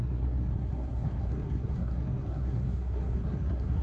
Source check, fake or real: fake